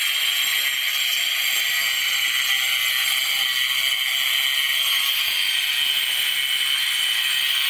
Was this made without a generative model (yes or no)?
yes